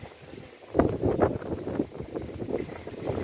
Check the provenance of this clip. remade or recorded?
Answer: recorded